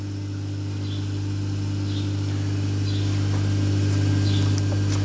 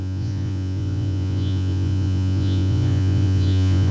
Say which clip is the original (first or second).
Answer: first